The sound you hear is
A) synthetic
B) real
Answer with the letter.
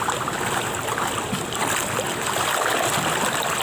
B